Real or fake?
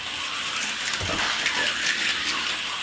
real